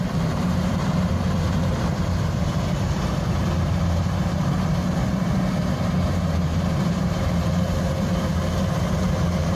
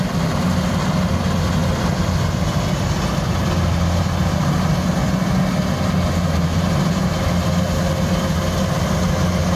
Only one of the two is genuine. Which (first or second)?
second